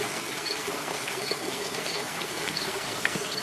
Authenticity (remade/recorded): remade